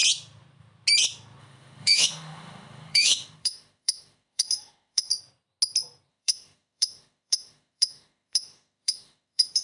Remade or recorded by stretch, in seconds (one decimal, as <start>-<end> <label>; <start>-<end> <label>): 0.0-1.4 recorded; 1.4-5.1 remade; 5.1-6.1 recorded; 6.1-9.6 remade